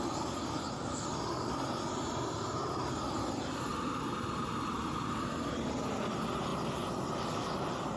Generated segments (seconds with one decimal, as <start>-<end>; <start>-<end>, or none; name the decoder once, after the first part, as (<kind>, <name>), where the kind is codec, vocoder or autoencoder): none